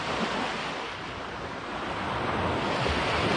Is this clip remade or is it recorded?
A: recorded